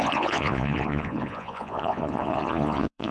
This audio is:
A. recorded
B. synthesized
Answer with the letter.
B